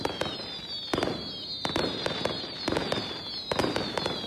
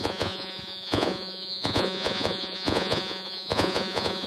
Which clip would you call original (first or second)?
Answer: first